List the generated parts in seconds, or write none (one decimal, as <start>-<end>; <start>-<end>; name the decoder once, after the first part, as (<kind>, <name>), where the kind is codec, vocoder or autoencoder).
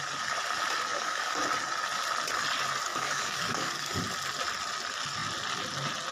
0.9-1.4 (codec, DAC); 2.9-4.0